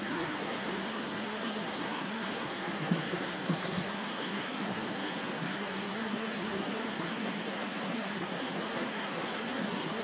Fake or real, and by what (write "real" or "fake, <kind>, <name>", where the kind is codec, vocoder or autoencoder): fake, codec, SNAC